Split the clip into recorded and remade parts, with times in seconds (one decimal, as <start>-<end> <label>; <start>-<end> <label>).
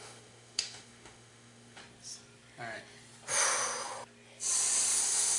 0.0-1.8 remade; 1.8-5.0 recorded; 5.0-5.4 remade